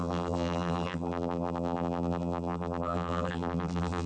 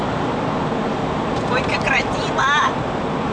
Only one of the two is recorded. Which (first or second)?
second